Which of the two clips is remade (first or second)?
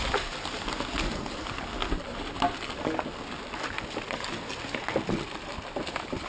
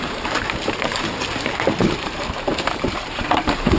second